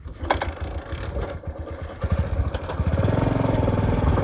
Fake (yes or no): no